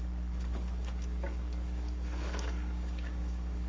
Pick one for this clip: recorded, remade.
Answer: remade